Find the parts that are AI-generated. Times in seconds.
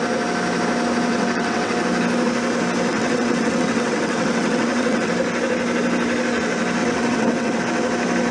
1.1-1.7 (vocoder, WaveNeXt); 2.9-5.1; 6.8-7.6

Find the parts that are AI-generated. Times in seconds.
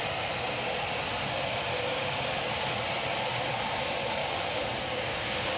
1.7-2.4 (codec, DAC); 4.2-5.6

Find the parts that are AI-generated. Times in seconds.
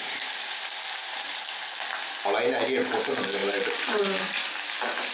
3.4-4.0 (vocoder, BigVGAN v2)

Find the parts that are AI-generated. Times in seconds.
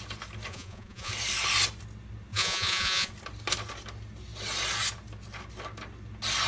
0.5-1.1 (vocoder, Vocos); 2.3-3.1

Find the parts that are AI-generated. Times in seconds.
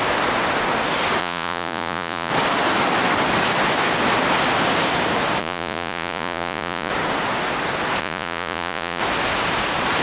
1.2-2.3 (vocoder, Vocos); 5.4-6.9; 8.0-9.0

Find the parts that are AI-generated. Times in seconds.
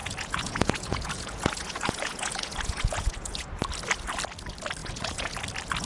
0.0-3.5 (vocoder, Vocos); 4.8-5.4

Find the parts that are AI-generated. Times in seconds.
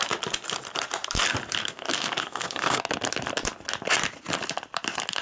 1.6-2.8 (codec, SNAC)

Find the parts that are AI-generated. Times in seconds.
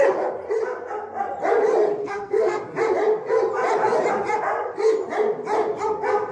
2.0-2.6 (codec, SNAC)